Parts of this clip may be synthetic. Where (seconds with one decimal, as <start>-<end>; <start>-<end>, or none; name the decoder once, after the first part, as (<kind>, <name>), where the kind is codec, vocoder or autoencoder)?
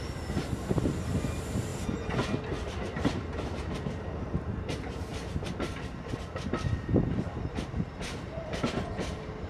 0.0-1.7 (vocoder, BigVGAN v2); 2.8-5.1; 7.5-9.5